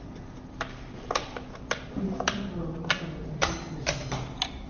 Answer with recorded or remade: recorded